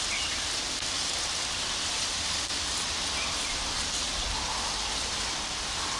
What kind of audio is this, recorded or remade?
recorded